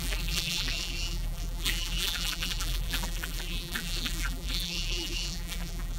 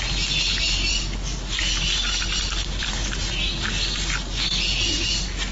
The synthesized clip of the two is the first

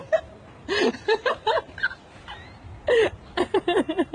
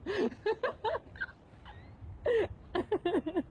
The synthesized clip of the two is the first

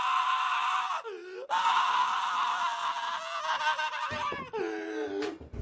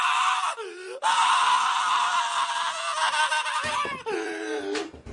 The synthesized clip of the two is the second